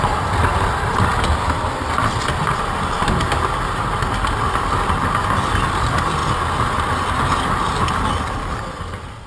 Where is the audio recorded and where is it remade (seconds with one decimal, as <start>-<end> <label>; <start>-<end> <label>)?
0.0-9.3 recorded